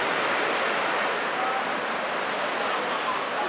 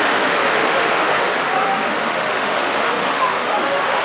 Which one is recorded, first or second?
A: first